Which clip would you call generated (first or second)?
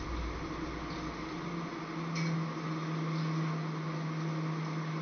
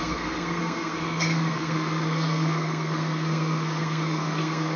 second